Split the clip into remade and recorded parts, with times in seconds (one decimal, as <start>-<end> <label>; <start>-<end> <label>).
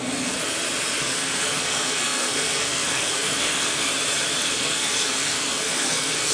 0.0-0.4 remade; 0.4-1.0 recorded; 1.0-3.9 remade; 3.9-4.4 recorded; 4.4-6.3 remade